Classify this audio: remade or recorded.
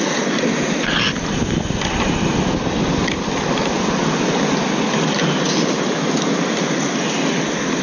recorded